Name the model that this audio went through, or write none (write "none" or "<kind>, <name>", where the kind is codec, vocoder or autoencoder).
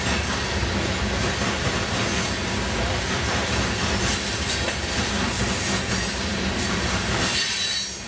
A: none